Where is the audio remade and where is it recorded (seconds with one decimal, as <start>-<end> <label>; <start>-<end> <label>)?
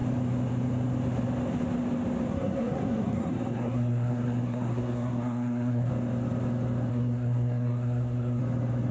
0.0-2.3 recorded; 2.3-5.9 remade; 5.9-6.9 recorded; 6.9-8.4 remade; 8.4-8.9 recorded